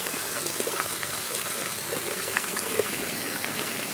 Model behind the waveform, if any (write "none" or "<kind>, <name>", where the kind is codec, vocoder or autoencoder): codec, SNAC